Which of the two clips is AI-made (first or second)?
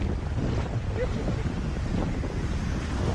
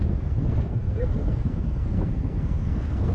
second